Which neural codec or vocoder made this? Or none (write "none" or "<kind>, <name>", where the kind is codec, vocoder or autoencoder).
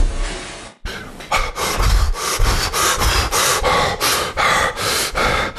none